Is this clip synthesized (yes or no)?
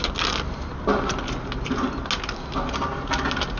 no